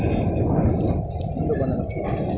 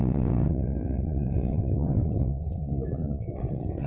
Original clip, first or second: first